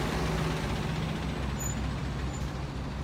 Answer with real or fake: real